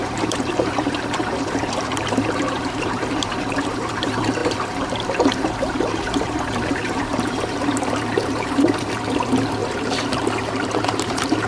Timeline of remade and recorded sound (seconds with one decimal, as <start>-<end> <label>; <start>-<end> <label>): 0.0-9.6 remade; 9.6-10.8 recorded; 10.8-11.5 remade